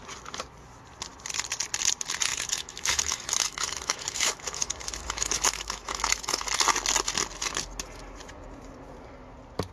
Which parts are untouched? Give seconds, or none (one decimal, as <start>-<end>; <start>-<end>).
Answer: 0.0-2.3; 6.4-9.7